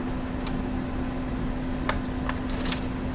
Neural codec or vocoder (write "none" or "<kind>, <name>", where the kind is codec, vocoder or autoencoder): none